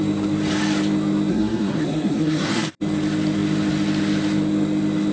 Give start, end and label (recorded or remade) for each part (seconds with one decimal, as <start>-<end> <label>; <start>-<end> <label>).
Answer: 0.0-1.3 recorded; 1.3-2.8 remade; 2.8-5.1 recorded